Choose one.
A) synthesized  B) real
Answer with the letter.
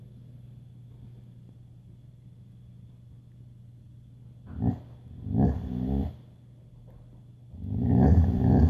B